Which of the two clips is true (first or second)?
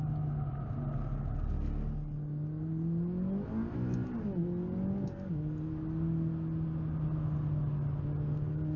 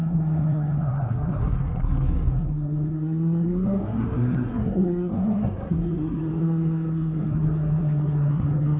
first